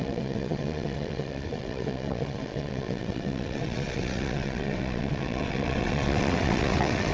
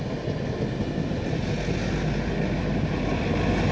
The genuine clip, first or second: second